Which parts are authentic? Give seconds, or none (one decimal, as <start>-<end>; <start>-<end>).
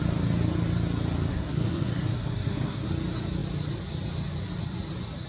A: 0.0-1.3; 2.9-5.3